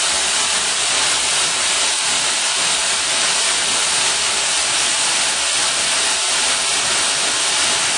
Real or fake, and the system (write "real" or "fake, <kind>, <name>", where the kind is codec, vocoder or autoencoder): real